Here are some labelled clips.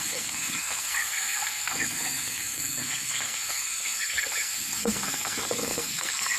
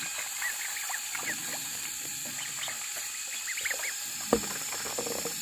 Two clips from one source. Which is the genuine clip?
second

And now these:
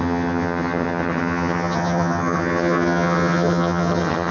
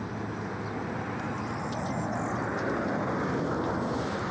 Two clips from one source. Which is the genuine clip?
second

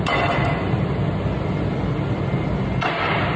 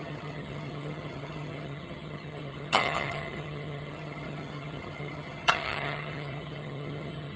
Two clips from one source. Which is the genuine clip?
first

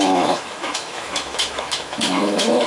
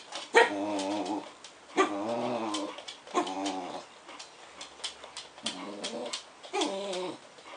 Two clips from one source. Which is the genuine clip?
second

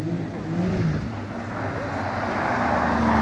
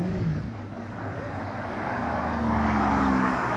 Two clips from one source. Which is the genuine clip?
first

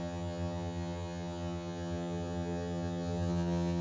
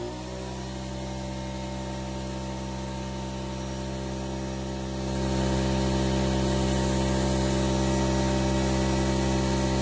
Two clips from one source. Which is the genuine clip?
second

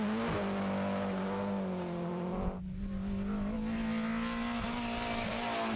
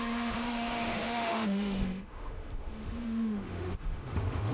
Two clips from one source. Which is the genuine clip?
first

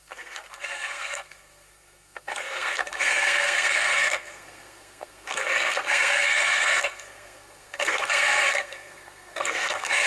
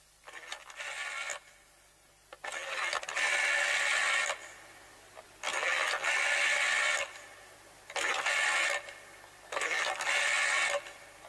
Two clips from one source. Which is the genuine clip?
second